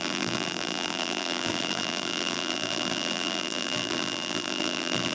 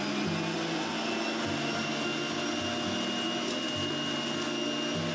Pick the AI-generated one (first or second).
first